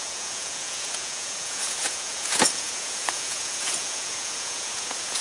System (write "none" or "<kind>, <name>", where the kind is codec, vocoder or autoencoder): vocoder, Vocos